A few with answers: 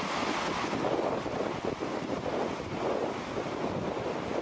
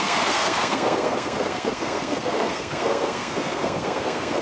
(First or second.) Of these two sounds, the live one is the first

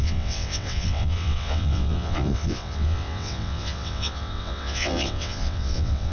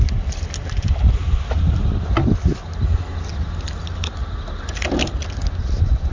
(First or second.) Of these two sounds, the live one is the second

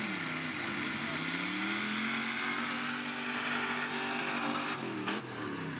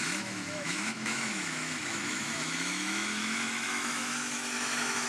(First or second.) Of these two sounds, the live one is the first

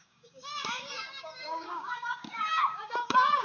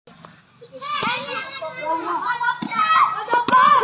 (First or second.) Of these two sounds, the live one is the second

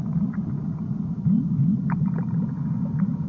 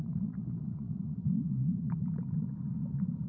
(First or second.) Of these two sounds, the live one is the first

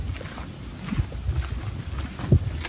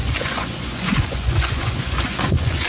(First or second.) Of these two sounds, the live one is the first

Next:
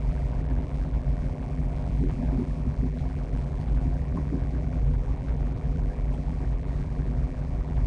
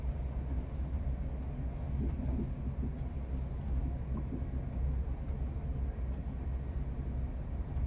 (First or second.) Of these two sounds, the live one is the second